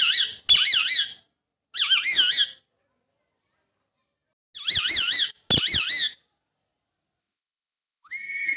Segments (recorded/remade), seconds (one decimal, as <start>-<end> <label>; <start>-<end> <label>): 0.0-7.2 recorded; 7.2-8.6 remade